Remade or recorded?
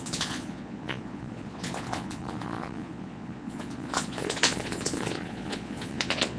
remade